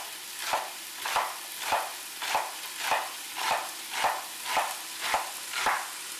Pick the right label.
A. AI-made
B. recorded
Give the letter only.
A